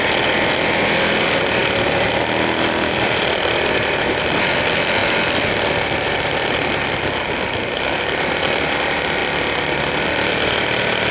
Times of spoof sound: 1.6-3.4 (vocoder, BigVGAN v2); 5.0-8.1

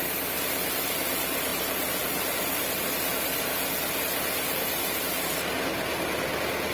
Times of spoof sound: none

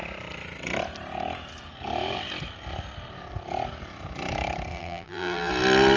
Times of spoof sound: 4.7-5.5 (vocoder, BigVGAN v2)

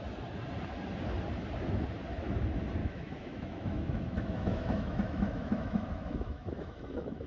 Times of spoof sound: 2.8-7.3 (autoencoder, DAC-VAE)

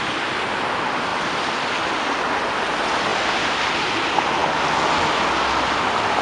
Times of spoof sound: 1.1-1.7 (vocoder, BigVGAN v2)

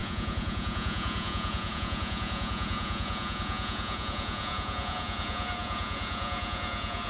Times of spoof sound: 0.0-7.1 (vocoder, Vocos)